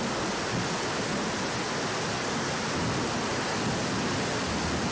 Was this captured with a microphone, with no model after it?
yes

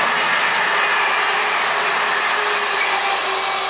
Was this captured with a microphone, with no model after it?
yes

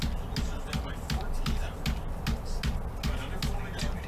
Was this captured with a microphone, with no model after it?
yes